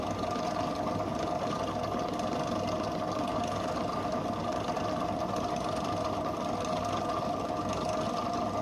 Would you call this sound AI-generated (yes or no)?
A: no